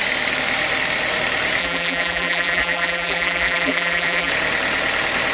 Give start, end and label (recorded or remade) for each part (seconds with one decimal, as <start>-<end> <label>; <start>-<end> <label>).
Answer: 0.0-1.6 recorded; 1.6-4.3 remade; 4.3-5.3 recorded